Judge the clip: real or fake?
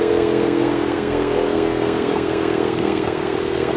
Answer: fake